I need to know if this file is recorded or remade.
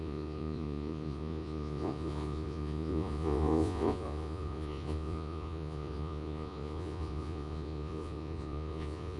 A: remade